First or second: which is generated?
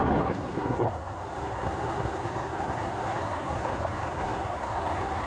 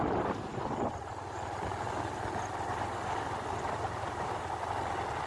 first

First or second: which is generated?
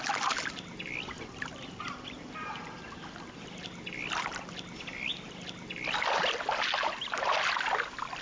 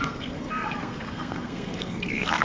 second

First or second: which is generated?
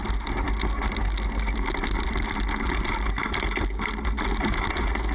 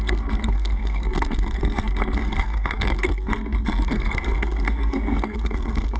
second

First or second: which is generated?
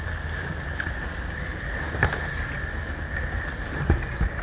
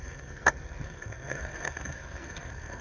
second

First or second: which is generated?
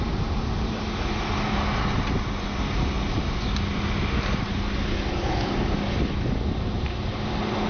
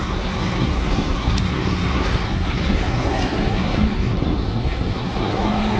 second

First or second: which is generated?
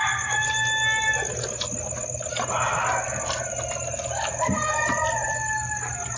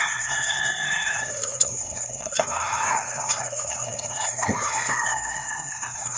second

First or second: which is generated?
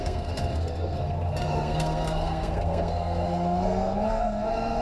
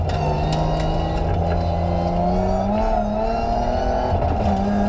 first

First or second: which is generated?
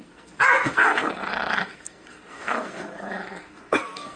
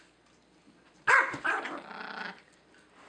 first